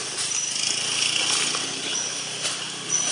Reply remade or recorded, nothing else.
recorded